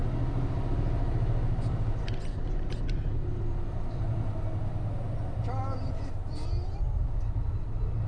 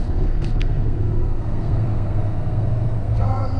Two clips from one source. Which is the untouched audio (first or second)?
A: first